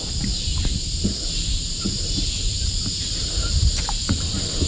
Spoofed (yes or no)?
no